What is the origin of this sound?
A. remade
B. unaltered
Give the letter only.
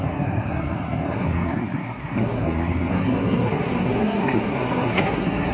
A